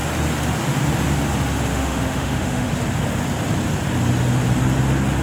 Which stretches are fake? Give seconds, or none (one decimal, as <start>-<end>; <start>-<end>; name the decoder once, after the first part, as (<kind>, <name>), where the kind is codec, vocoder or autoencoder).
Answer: 1.7-2.7 (autoencoder, DAC-VAE)